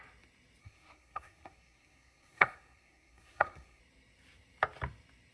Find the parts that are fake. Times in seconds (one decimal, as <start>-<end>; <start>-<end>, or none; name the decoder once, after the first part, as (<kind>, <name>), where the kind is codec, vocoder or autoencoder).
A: 0.6-3.8 (codec, SNAC)